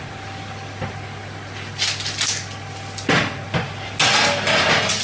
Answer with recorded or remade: recorded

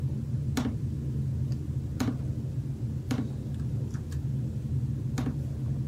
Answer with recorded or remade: recorded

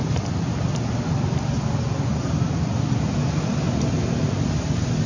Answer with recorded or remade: recorded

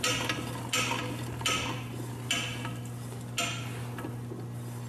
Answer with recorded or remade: recorded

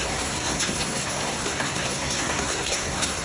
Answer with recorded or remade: remade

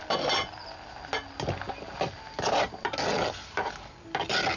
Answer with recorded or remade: recorded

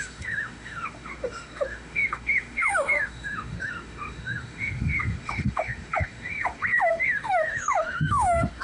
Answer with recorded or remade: remade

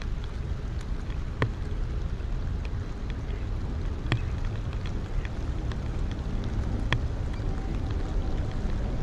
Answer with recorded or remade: recorded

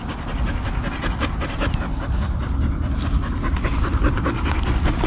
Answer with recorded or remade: recorded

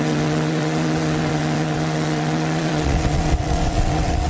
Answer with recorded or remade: remade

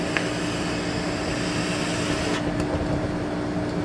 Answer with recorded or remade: recorded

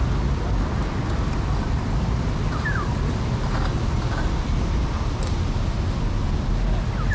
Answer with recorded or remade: recorded